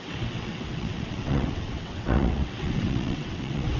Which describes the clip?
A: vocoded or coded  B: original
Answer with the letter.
A